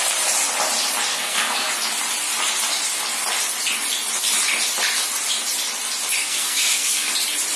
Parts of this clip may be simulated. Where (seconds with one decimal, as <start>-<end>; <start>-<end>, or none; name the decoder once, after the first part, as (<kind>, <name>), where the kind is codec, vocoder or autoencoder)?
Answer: 1.1-1.7 (codec, SNAC); 6.2-7.1